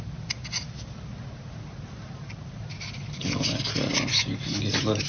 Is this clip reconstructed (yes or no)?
no